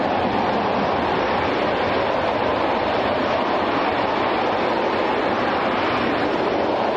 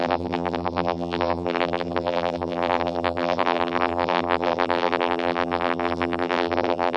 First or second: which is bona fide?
first